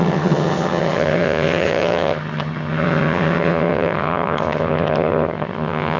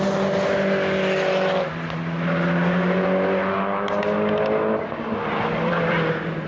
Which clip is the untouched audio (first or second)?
second